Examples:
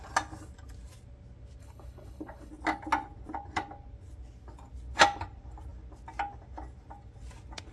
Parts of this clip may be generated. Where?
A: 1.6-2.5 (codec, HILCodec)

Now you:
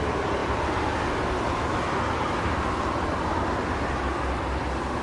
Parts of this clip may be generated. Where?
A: none

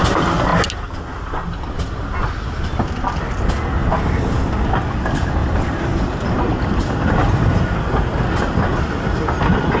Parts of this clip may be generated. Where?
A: 3.8-4.5 (vocoder, BigVGAN v2); 5.4-7.4

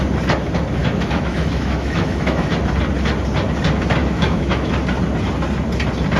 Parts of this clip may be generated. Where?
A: 0.8-2.5 (autoencoder, DAC-VAE); 4.0-4.7